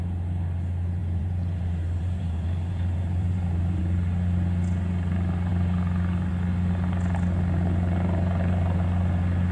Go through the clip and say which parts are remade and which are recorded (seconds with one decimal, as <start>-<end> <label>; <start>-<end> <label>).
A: 0.0-1.0 recorded; 1.0-3.8 remade; 3.8-9.5 recorded